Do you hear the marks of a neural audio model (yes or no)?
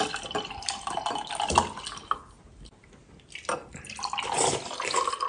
no